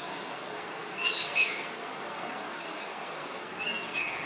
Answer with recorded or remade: remade